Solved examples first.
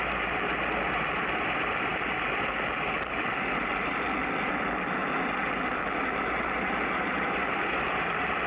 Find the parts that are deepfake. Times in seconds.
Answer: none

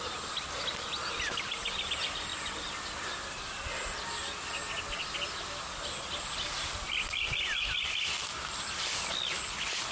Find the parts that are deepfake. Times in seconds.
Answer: none

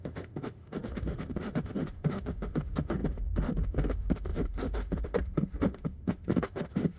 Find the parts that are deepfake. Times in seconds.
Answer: 0.0-7.0 (autoencoder, DAC-VAE)

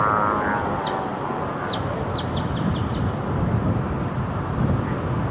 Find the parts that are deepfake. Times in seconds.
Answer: none

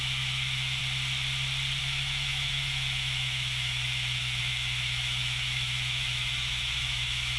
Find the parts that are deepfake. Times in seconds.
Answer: 0.0-0.8 (autoencoder, DAC-VAE); 1.8-7.4

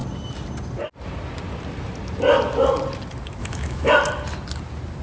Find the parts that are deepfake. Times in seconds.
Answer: 3.4-3.9 (autoencoder, DAC-VAE)

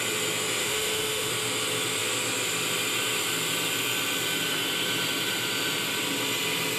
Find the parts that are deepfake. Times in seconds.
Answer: 0.6-1.3 (autoencoder, DAC-VAE)

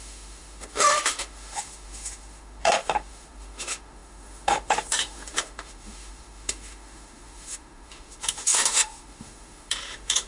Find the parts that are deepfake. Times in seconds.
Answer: 0.0-10.3 (autoencoder, DAC-VAE)